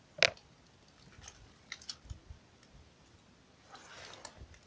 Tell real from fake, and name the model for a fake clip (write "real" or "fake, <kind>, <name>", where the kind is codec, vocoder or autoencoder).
real